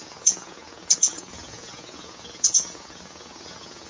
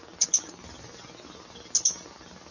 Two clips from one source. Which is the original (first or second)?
second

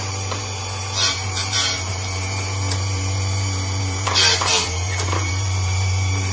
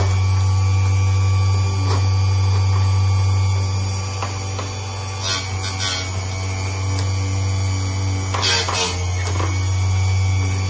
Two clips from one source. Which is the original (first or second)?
second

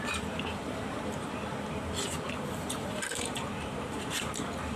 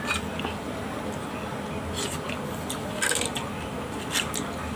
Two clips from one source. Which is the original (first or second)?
second